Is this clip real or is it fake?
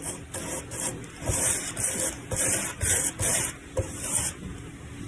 real